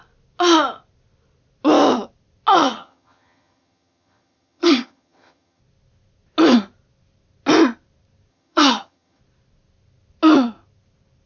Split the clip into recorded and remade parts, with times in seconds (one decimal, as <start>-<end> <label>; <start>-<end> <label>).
0.0-2.6 recorded; 2.6-5.6 remade; 5.6-8.3 recorded; 8.3-9.2 remade; 9.2-11.3 recorded